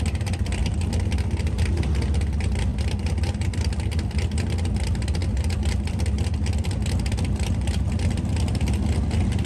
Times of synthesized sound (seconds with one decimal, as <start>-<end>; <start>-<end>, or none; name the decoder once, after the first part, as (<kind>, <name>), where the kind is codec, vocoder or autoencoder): 0.6-1.8 (vocoder, BigVGAN v2); 5.2-6.9